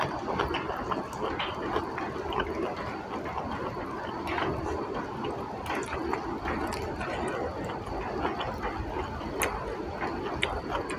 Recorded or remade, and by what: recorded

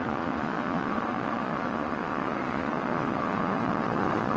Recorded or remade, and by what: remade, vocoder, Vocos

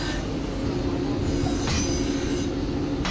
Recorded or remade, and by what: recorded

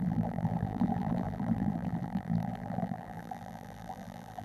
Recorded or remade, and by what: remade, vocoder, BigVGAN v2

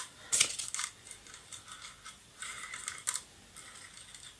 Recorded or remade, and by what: recorded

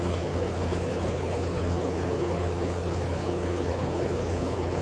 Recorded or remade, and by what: remade, codec, HILCodec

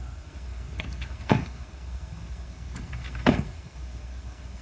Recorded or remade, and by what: remade, codec, SNAC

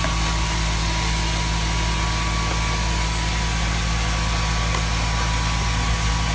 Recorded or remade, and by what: recorded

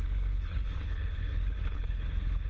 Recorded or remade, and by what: remade, codec, HILCodec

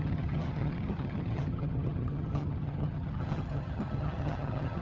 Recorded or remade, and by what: remade, vocoder, HiFi-GAN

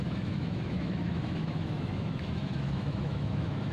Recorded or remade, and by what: remade, autoencoder, DAC-VAE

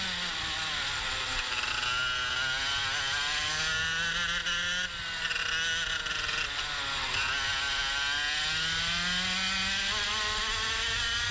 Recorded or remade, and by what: recorded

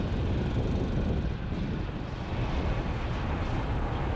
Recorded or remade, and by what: recorded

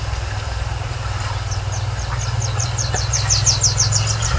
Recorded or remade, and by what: recorded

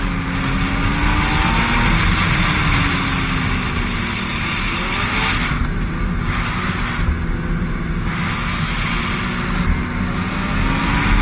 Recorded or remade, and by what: recorded